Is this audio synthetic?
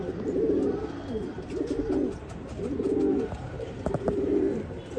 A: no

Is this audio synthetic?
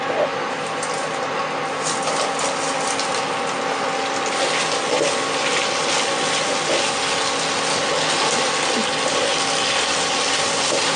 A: no